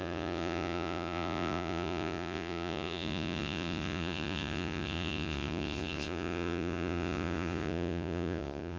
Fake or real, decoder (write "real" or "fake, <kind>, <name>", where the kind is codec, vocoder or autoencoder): fake, vocoder, Vocos